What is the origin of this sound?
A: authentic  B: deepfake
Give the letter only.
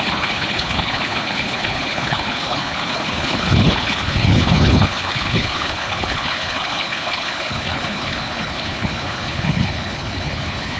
B